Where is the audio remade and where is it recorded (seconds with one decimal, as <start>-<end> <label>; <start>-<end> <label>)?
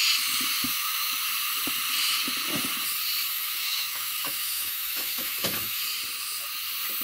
0.0-0.7 recorded; 0.7-1.2 remade; 1.2-3.3 recorded; 3.3-5.8 remade; 5.8-7.0 recorded